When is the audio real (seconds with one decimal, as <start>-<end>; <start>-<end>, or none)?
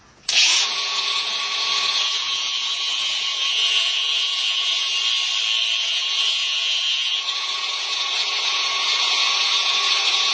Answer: 4.9-5.8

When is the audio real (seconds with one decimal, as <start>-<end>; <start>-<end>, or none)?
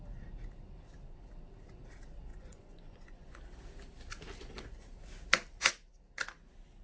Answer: 0.0-2.3; 3.4-6.8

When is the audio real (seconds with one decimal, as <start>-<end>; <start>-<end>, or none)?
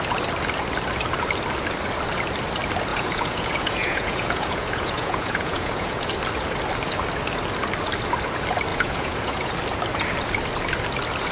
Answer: 0.0-2.9; 6.1-8.7; 9.5-11.3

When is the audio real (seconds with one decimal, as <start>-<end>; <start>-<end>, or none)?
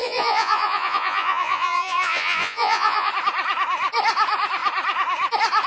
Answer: 3.1-5.7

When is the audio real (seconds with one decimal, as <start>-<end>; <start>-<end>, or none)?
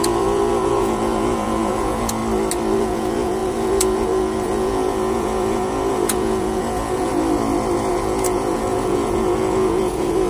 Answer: 2.2-2.8; 7.1-7.9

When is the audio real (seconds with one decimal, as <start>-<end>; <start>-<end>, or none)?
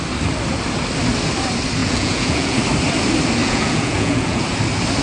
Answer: 0.0-1.8; 2.6-3.4; 4.4-5.0